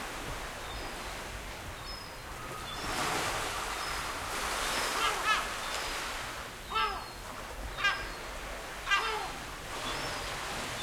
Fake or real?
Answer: real